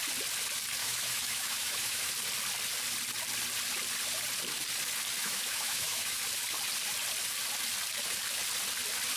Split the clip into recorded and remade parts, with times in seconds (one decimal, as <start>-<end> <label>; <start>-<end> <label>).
0.0-0.8 recorded; 0.8-2.1 remade; 2.1-5.2 recorded; 5.2-6.2 remade; 6.2-9.2 recorded

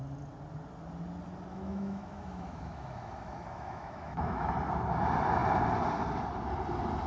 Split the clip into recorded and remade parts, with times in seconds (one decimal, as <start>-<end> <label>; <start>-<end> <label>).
0.0-1.5 recorded; 1.5-4.5 remade; 4.5-7.1 recorded

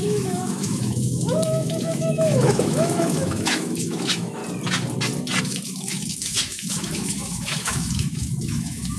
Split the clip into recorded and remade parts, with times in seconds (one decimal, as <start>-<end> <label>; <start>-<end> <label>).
0.0-4.4 remade; 4.4-5.4 recorded; 5.4-9.0 remade

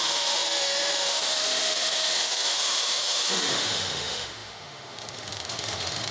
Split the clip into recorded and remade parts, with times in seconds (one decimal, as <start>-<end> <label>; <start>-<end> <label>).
0.0-6.1 remade

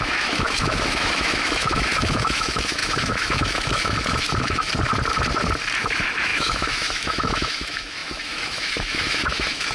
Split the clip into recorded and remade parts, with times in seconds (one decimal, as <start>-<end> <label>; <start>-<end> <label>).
0.0-4.7 remade; 4.7-5.8 recorded; 5.8-9.7 remade

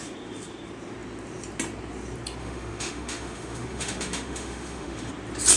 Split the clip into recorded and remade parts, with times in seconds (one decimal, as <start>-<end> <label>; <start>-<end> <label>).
0.0-2.4 recorded; 2.4-5.1 remade; 5.1-5.6 recorded

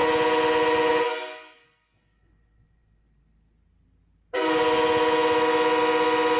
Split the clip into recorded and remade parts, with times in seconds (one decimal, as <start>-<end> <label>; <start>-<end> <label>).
0.0-6.4 recorded

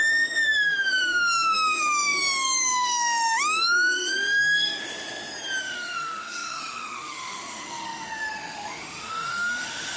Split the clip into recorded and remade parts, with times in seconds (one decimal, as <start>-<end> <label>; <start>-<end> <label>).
0.0-4.8 remade; 4.8-5.6 recorded; 5.6-10.0 remade